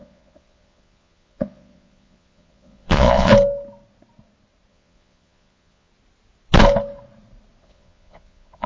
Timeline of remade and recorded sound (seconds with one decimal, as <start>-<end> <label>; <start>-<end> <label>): 0.0-3.3 remade; 3.3-4.7 recorded; 4.7-5.9 remade; 5.9-7.6 recorded; 7.6-8.7 remade